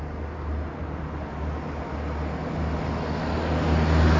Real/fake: real